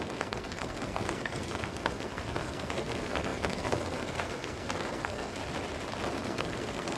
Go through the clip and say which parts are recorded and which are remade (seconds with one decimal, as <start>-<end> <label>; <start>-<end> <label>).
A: 0.0-5.4 remade; 5.4-6.1 recorded; 6.1-7.0 remade